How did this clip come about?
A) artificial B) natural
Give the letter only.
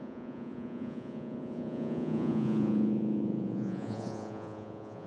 A